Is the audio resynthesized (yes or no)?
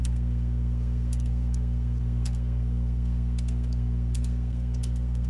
yes